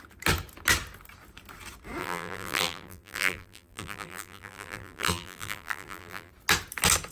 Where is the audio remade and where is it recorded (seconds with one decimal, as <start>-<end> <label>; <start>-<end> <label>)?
0.0-2.0 recorded; 2.0-6.3 remade; 6.3-7.1 recorded